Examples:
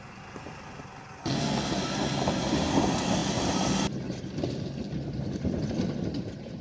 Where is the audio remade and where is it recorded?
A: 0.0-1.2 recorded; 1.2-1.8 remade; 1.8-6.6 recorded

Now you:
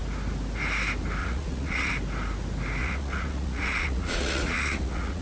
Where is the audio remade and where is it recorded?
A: 0.0-1.2 recorded; 1.2-1.9 remade; 1.9-2.8 recorded; 2.8-5.2 remade